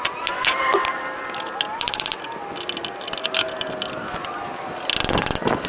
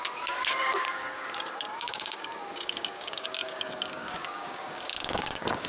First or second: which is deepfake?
second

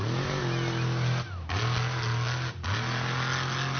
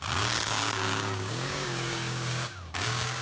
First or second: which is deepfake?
second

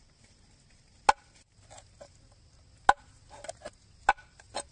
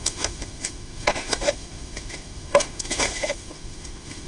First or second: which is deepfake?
second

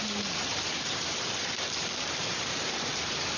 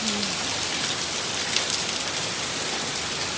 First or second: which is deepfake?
first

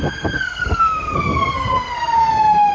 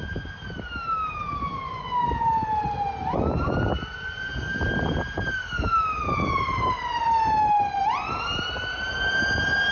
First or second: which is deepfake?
first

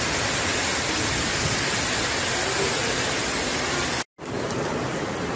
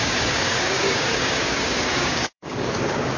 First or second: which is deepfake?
second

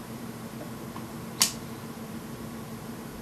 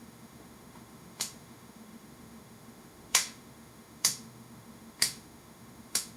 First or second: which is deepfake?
second